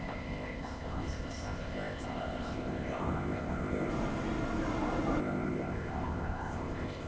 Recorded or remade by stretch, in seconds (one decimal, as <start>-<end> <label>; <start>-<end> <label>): 0.0-3.9 remade; 3.9-5.2 recorded; 5.2-7.1 remade